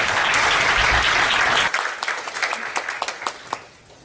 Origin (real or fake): real